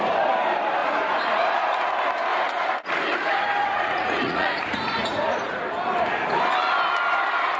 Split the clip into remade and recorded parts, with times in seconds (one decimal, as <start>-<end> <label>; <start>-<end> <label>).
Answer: 0.0-0.8 recorded; 0.8-1.9 remade; 1.9-2.3 recorded; 2.3-5.6 remade; 5.6-7.6 recorded